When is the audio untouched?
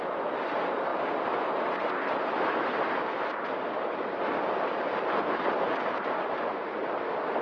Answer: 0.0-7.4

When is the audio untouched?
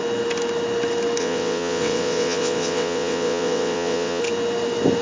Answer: 0.0-1.2; 4.2-5.0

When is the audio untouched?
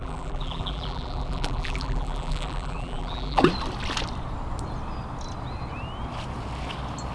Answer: 3.4-7.1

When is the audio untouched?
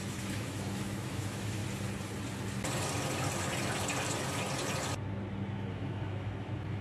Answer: 1.6-5.7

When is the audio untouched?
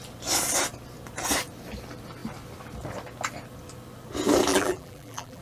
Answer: 0.0-4.5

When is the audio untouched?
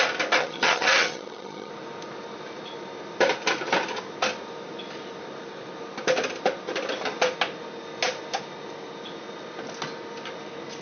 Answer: 0.0-0.4; 1.7-10.8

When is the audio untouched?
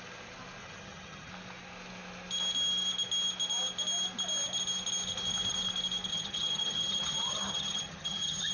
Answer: 0.0-0.6; 1.3-6.1